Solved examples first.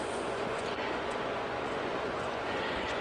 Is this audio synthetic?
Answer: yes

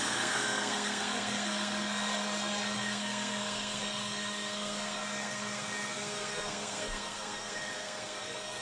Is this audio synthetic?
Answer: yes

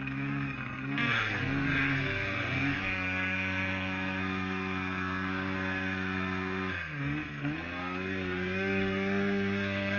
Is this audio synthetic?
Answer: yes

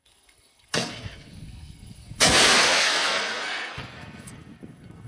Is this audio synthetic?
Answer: yes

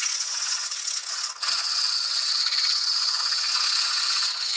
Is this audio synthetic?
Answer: yes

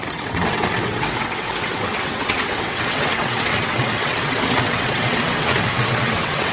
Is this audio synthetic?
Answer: yes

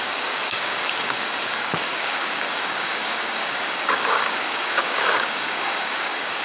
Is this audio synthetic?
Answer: yes